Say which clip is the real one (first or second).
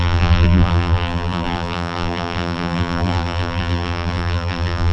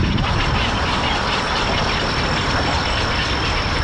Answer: second